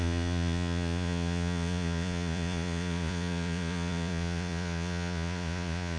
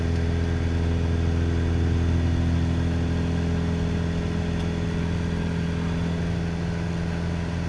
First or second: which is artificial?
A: first